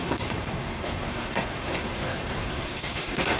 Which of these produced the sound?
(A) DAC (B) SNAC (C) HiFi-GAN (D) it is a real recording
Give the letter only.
B